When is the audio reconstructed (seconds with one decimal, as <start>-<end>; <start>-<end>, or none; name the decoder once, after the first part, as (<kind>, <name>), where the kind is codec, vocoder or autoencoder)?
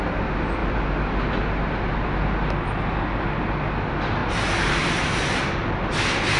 none